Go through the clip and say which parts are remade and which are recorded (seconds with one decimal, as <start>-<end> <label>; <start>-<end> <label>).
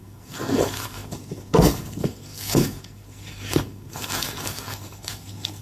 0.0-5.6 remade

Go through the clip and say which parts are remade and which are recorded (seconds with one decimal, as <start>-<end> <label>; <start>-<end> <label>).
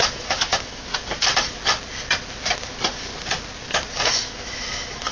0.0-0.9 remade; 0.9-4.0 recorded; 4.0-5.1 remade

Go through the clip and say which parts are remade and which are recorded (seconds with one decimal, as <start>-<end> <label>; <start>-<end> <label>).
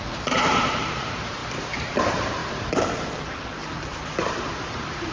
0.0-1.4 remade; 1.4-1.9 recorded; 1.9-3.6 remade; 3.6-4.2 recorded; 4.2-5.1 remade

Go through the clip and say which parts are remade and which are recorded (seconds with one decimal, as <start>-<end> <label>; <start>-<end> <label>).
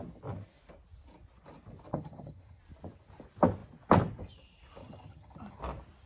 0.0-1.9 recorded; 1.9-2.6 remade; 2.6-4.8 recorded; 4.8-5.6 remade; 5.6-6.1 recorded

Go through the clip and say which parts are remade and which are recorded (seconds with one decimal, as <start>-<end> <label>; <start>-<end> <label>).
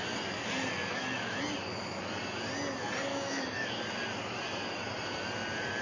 0.0-0.9 recorded; 0.9-1.4 remade; 1.4-3.1 recorded; 3.1-3.8 remade; 3.8-5.8 recorded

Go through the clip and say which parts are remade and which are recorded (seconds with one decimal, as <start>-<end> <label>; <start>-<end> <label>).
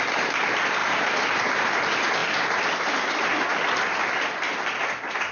0.0-5.3 recorded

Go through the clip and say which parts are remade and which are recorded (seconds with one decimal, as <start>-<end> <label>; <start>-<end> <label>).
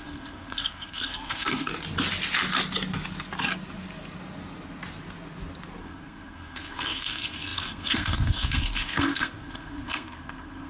0.0-1.7 remade; 1.7-5.8 recorded; 5.8-10.7 remade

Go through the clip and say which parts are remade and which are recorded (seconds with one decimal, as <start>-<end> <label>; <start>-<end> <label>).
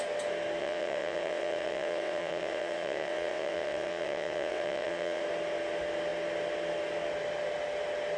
0.0-0.6 recorded; 0.6-5.2 remade; 5.2-8.2 recorded